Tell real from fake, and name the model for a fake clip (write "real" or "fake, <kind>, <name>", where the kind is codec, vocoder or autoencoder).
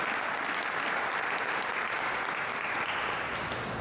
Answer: real